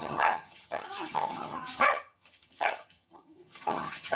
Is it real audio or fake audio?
fake